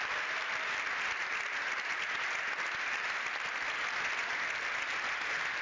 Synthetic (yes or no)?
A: no